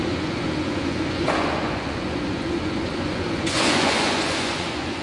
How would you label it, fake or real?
fake